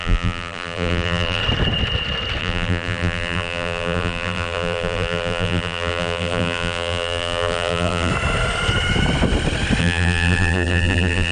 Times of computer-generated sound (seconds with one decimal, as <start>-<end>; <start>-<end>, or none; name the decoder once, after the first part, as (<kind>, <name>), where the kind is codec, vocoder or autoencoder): 0.0-1.4 (vocoder, BigVGAN v2); 2.4-8.1; 9.8-11.3